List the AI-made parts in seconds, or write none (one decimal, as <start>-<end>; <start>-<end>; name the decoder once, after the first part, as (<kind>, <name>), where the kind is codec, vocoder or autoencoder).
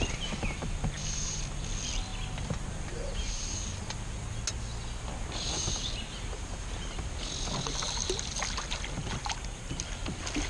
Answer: none